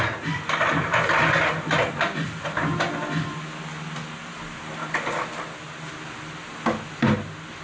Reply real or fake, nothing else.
real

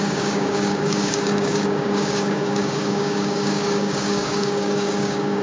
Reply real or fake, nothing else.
fake